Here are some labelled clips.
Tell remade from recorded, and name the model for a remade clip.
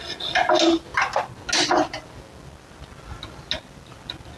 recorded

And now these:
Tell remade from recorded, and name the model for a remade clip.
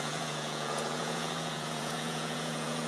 remade, vocoder, Vocos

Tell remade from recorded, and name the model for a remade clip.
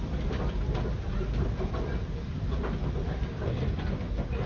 recorded